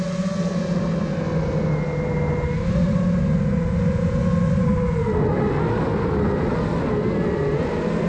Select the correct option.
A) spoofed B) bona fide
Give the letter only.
B